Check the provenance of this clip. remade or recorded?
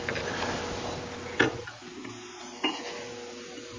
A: recorded